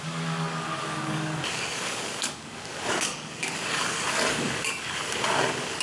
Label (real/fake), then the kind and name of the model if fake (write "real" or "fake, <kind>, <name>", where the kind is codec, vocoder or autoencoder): fake, codec, DAC